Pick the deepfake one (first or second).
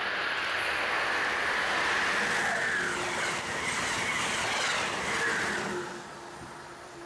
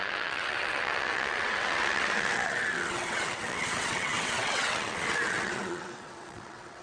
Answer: second